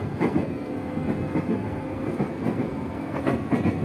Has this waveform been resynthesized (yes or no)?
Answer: yes